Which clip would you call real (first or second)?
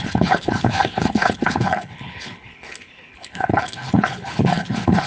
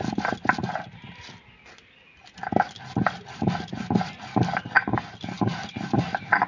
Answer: second